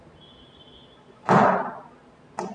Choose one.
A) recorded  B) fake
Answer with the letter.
A